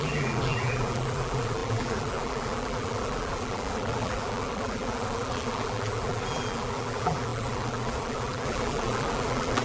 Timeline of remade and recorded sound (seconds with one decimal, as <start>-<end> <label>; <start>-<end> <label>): 0.0-9.6 remade